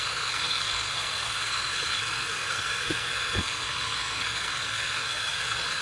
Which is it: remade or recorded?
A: remade